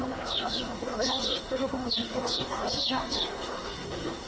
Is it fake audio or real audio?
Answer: fake